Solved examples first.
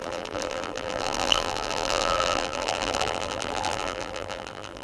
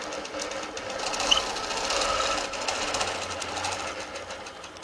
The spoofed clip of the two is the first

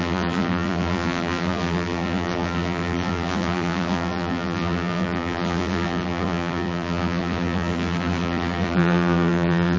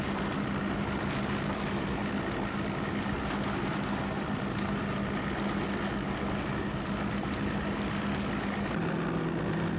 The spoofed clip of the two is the first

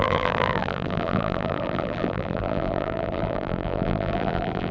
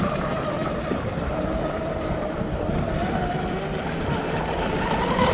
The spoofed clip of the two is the first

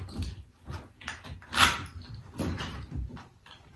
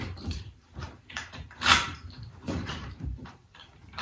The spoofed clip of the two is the second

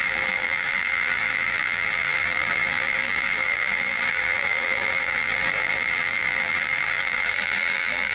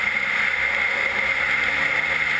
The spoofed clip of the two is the first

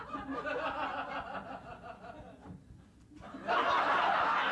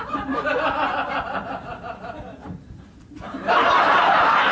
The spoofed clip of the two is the second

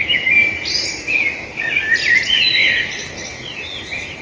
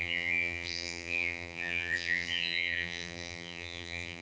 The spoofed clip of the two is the second